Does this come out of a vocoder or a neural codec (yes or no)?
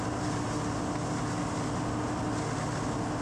no